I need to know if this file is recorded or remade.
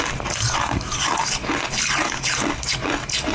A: recorded